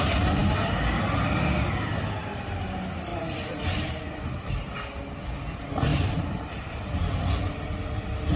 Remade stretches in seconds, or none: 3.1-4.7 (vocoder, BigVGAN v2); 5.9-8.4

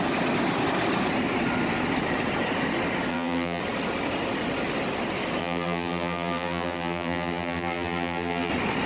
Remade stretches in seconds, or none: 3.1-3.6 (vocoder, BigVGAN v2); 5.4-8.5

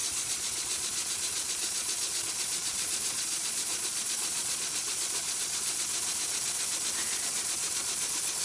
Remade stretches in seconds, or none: 0.0-5.9 (vocoder, Vocos); 7.2-8.4